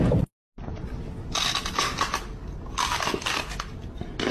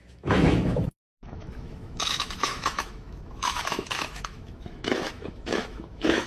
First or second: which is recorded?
first